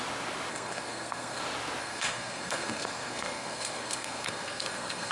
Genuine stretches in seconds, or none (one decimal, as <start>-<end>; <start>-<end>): 0.0-0.5; 1.4-1.8

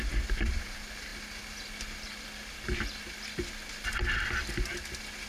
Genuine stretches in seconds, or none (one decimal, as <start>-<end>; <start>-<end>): 0.0-5.3

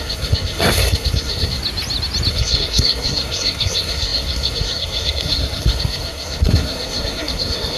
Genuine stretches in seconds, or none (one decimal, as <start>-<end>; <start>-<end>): 1.6-2.3

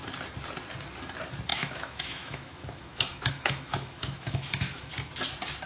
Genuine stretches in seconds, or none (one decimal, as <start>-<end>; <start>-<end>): 0.0-1.5; 4.9-5.7

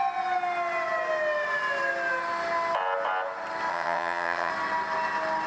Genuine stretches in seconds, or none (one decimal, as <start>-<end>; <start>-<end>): 0.0-3.7; 4.5-5.5